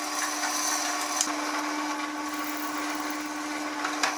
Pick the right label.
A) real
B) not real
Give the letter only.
A